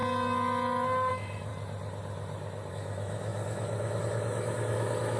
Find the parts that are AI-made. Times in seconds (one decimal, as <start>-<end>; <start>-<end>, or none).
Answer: 1.1-1.5; 2.7-5.2